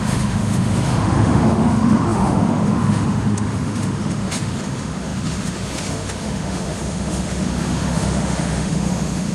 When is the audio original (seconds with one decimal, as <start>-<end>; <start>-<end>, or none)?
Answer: none